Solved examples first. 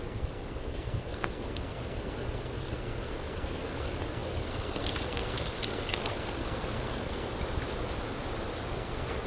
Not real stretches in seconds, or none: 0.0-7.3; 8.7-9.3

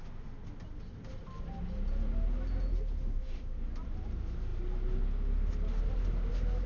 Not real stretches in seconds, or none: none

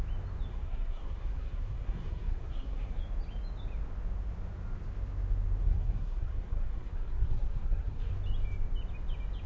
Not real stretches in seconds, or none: 0.5-3.0; 5.6-8.1